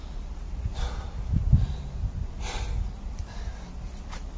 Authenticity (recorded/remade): recorded